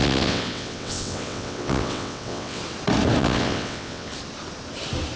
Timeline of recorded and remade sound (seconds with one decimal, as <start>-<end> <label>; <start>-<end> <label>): 0.0-2.6 remade; 2.6-3.2 recorded; 3.2-4.1 remade; 4.1-5.2 recorded